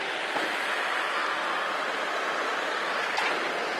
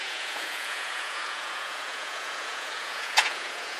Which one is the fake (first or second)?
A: second